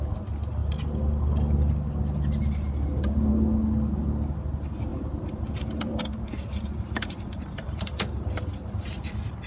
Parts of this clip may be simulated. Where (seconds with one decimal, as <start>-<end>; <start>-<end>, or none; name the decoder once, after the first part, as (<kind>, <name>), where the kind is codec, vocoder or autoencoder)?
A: 4.9-9.1 (vocoder, BigVGAN v2)